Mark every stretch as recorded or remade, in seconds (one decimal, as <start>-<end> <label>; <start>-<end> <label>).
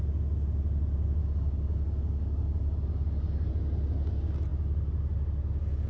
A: 0.0-1.2 recorded; 1.2-3.5 remade; 3.5-5.9 recorded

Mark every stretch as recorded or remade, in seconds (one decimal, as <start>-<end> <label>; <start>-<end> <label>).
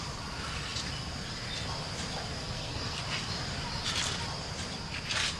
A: 0.0-2.3 recorded; 2.3-3.0 remade; 3.0-5.4 recorded